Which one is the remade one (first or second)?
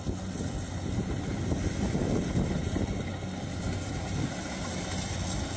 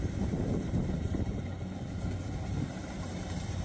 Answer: second